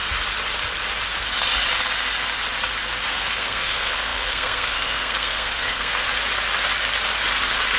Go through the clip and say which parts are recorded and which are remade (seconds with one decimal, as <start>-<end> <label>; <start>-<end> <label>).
0.0-3.2 recorded; 3.2-6.0 remade; 6.0-7.8 recorded